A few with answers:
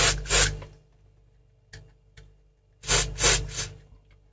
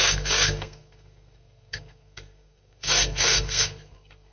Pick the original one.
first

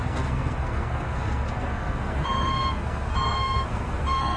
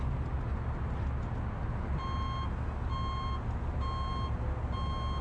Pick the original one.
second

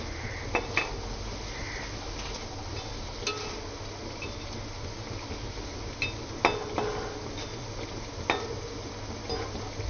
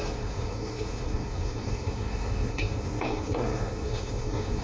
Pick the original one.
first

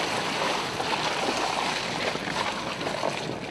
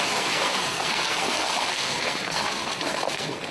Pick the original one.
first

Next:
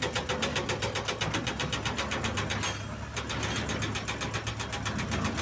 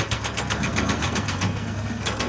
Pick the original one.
first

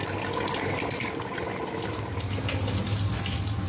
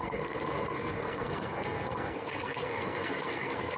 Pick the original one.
first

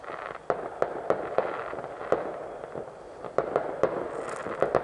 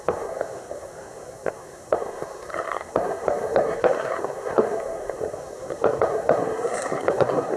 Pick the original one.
first